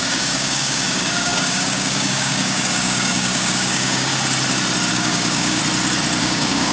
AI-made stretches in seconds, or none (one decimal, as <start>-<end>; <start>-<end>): 0.0-4.1; 4.9-5.6; 6.2-6.7